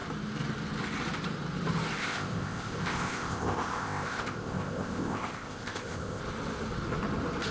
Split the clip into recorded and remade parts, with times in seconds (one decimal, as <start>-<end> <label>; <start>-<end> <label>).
0.0-2.0 recorded; 2.0-6.2 remade; 6.2-7.5 recorded